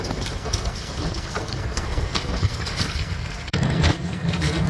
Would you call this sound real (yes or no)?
no